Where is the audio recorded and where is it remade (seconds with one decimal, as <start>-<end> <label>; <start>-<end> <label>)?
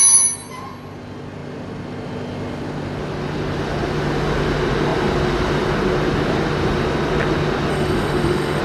0.0-7.7 recorded; 7.7-8.6 remade